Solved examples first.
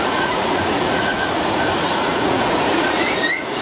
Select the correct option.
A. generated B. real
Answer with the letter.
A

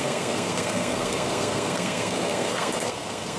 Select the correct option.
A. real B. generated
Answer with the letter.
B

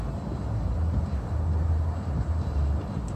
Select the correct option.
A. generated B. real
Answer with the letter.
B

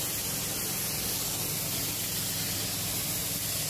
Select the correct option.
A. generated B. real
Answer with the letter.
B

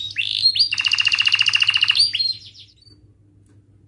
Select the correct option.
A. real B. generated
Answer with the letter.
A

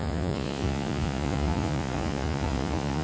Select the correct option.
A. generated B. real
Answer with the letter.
A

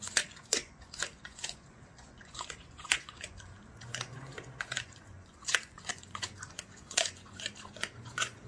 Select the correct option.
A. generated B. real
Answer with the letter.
A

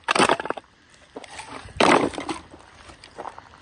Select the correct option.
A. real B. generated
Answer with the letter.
B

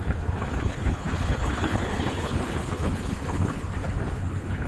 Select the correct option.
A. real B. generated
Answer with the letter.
B